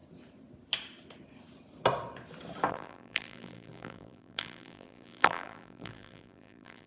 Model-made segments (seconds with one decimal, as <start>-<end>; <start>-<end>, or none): 2.7-6.9